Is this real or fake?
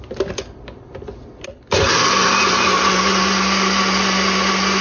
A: real